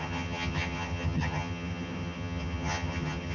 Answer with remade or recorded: remade